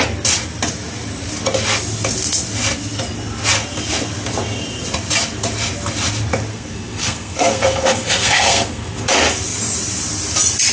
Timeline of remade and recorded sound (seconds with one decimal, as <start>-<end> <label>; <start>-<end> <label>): 0.0-6.5 recorded; 6.5-9.0 remade; 9.0-10.7 recorded